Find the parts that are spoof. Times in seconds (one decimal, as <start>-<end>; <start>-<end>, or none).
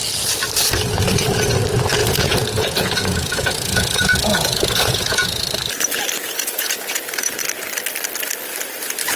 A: 2.0-5.4; 6.2-7.3